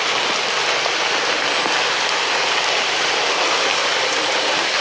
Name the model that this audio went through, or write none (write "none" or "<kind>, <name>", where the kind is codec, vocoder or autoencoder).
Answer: none